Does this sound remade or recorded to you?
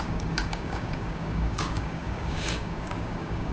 remade